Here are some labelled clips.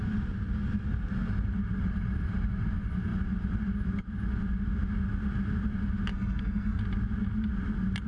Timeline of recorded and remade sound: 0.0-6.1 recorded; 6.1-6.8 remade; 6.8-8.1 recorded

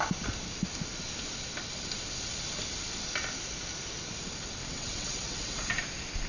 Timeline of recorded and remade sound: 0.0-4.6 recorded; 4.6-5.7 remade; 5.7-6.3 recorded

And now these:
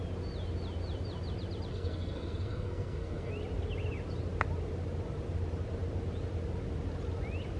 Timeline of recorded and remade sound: 0.0-1.7 recorded; 1.7-3.3 remade; 3.3-7.6 recorded